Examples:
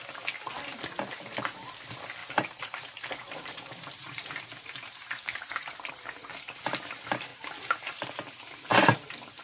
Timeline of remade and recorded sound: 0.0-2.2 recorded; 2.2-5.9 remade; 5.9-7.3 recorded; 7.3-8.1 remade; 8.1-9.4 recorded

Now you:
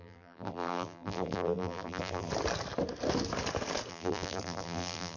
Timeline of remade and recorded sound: 0.0-2.3 remade; 2.3-3.9 recorded; 3.9-5.2 remade

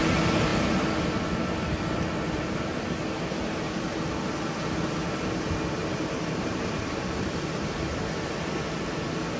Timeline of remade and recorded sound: 0.0-5.9 recorded; 5.9-8.1 remade; 8.1-9.4 recorded

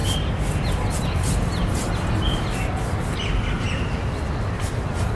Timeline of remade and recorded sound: 0.0-5.2 recorded

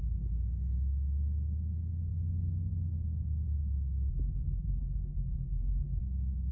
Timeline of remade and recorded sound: 0.0-4.1 recorded; 4.1-6.0 remade; 6.0-6.5 recorded

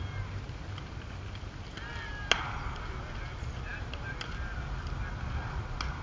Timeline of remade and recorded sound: 0.0-6.0 recorded

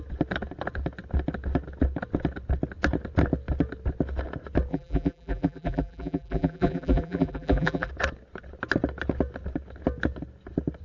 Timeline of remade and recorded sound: 0.0-4.7 recorded; 4.7-7.9 remade; 7.9-10.8 recorded

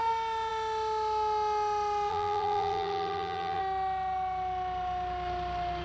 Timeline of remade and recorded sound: 0.0-2.1 recorded; 2.1-3.6 remade; 3.6-5.8 recorded